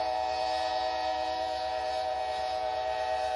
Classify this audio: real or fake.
fake